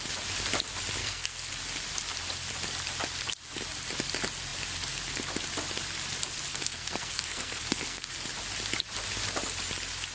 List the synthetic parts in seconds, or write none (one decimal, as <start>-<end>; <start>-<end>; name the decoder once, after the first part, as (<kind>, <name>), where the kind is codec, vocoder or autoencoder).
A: 1.0-1.5 (codec, SNAC); 6.5-8.1